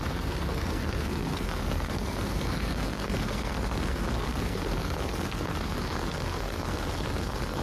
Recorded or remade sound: remade